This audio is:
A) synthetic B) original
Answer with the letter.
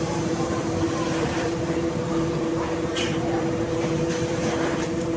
A